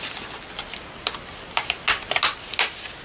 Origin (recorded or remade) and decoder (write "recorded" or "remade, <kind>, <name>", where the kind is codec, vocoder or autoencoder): recorded